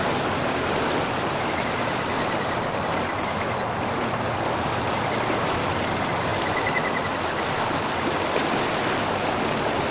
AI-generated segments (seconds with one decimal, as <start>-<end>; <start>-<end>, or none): none